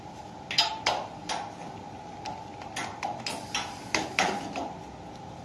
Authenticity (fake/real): real